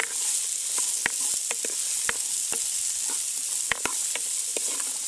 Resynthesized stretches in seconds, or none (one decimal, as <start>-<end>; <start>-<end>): none